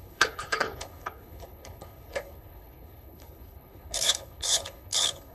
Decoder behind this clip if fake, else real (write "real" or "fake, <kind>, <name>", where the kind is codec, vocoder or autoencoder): fake, codec, HILCodec